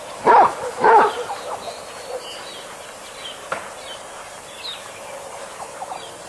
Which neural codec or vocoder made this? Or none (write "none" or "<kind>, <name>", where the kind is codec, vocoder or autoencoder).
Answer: none